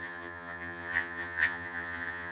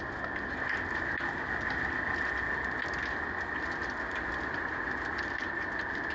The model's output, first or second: first